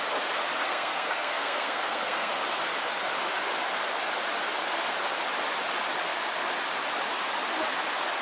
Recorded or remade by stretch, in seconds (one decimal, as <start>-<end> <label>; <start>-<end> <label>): 0.0-0.6 recorded; 0.6-2.3 remade; 2.3-8.2 recorded